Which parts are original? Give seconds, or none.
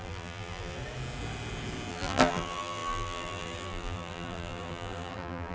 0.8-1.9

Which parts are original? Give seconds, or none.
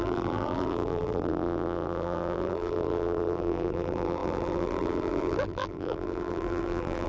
none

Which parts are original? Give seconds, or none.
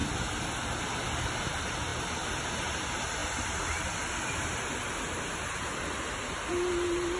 0.0-1.9; 2.5-7.2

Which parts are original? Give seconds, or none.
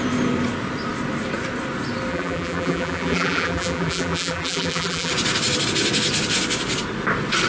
0.0-2.1; 5.1-7.5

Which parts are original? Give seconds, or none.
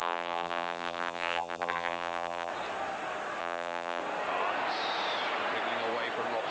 2.5-3.4; 4.0-6.5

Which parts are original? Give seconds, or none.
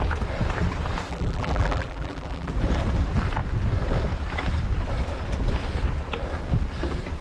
0.0-1.1; 2.5-7.2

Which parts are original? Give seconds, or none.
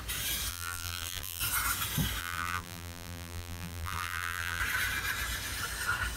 0.0-0.5; 1.4-2.2; 4.6-6.2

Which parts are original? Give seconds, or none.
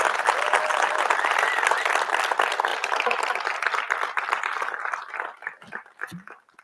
0.0-6.6